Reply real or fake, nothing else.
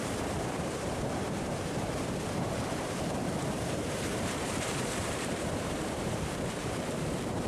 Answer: fake